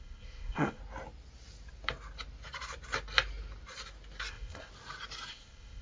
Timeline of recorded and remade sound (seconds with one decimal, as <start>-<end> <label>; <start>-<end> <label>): 0.0-0.8 remade; 0.8-4.3 recorded; 4.3-4.7 remade; 4.7-5.3 recorded; 5.3-5.8 remade